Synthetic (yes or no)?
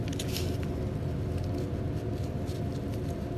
no